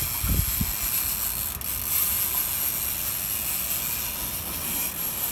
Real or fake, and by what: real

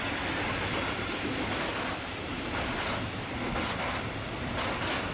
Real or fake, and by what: real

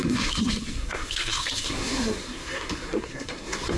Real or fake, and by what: fake, codec, SNAC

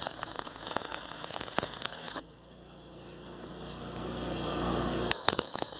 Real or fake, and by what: fake, codec, SNAC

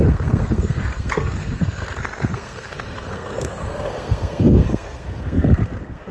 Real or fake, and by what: fake, codec, SNAC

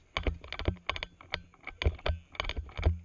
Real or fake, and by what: real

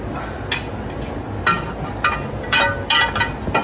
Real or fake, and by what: real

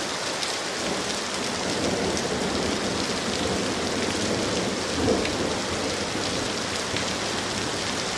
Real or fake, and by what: real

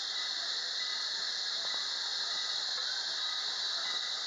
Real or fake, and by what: real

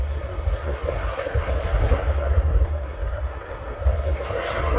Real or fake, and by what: fake, codec, SNAC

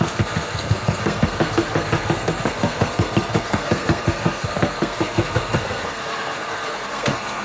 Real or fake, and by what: fake, codec, SNAC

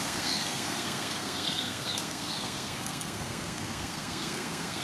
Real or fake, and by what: fake, codec, SNAC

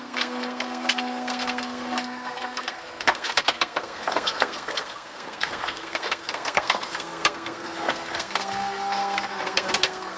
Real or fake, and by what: fake, codec, SNAC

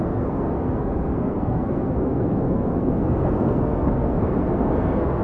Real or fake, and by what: fake, codec, SNAC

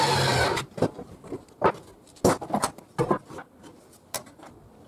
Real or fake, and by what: real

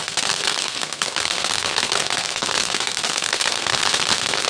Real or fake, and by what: fake, codec, SNAC